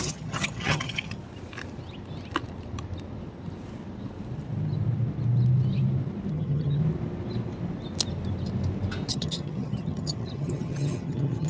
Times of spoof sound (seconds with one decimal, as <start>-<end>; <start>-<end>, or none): 0.0-1.2; 6.3-6.8; 9.1-11.5